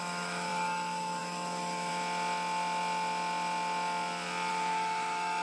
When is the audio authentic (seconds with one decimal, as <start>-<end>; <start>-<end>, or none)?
1.9-4.5